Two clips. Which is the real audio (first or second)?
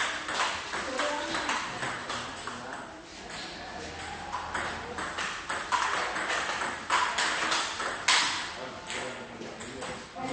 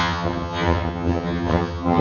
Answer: first